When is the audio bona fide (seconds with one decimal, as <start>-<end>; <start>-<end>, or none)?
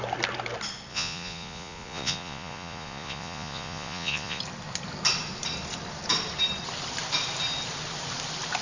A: 0.0-0.9; 4.4-8.6